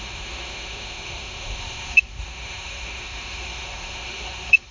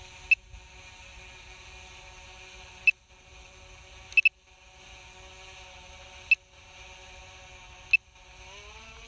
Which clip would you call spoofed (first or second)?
first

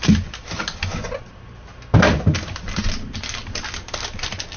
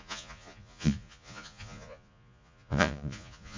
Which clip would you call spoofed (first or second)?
second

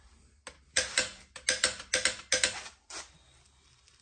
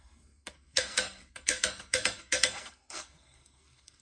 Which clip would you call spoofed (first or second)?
second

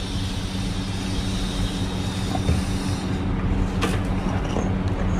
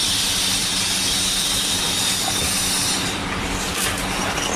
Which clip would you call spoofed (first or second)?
second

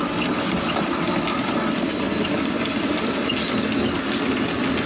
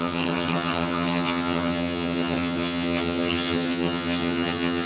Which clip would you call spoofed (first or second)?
second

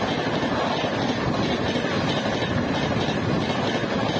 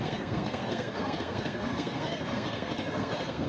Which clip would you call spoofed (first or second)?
second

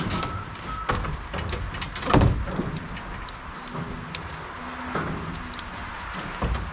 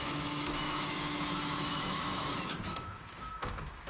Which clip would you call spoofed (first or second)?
second